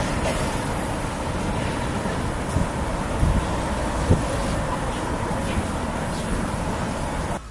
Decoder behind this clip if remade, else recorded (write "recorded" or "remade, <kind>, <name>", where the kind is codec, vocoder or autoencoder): recorded